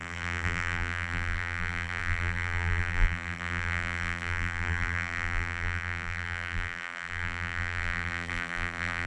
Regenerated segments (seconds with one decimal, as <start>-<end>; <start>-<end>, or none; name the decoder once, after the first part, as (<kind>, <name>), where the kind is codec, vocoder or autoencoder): 0.0-9.1 (vocoder, BigVGAN v2)